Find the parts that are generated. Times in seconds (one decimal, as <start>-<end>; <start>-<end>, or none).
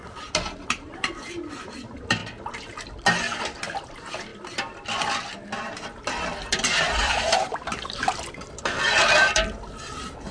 none